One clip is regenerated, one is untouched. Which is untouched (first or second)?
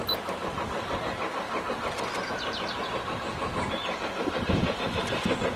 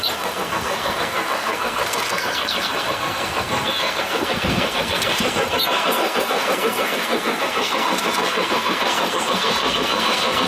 first